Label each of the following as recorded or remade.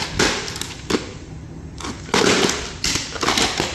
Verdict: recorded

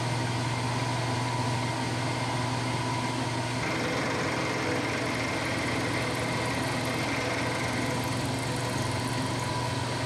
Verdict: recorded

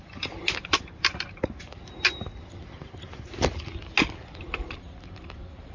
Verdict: recorded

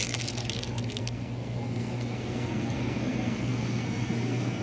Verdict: remade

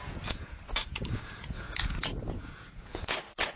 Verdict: remade